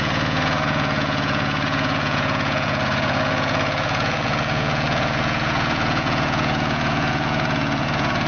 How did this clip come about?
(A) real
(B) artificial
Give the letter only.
B